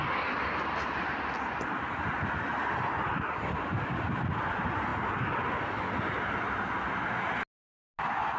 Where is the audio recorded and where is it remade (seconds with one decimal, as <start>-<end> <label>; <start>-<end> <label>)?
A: 0.0-8.4 recorded